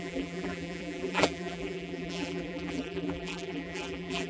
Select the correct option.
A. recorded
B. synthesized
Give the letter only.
B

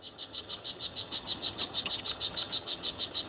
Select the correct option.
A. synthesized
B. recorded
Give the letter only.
A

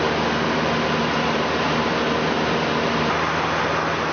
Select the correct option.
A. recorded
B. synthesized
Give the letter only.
A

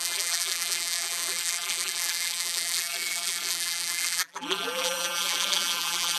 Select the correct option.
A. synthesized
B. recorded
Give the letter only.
A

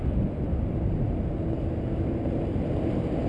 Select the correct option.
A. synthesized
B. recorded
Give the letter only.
B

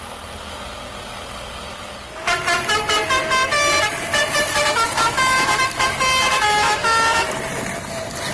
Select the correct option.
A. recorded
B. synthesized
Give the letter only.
A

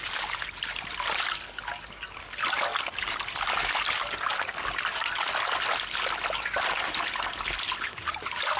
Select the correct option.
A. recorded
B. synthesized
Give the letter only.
A